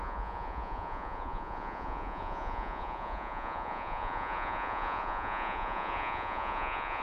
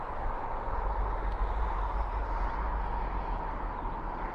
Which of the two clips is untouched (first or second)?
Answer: second